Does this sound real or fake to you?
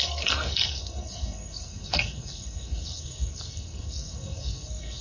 fake